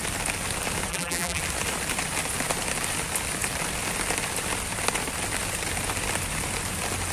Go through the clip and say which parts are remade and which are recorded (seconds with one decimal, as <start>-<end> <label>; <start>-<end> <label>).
0.0-0.9 recorded; 0.9-1.4 remade; 1.4-7.1 recorded